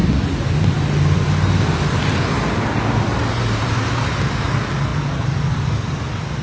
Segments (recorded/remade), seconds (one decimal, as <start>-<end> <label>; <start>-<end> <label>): 0.0-3.1 recorded; 3.1-4.5 remade; 4.5-4.9 recorded; 4.9-5.9 remade; 5.9-6.4 recorded